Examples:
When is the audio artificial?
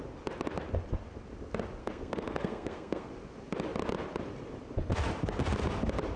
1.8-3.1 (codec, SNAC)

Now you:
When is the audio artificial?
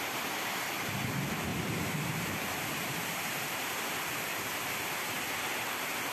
1.5-5.2 (vocoder, BigVGAN v2)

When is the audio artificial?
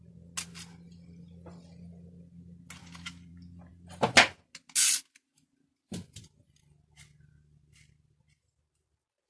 2.8-3.3 (vocoder, BigVGAN v2)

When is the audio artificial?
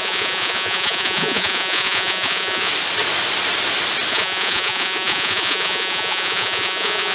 0.0-2.7 (vocoder, Vocos); 4.1-7.1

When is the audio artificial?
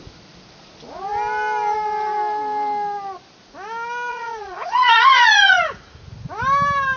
4.1-6.0 (vocoder, Vocos)